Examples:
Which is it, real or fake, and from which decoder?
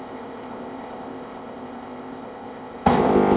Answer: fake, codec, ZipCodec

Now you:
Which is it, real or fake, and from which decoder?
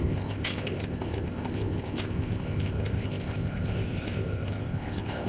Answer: fake, codec, ZipCodec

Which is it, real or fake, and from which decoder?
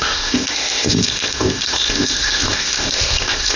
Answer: fake, codec, ZipCodec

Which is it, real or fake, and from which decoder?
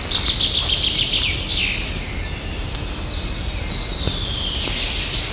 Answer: real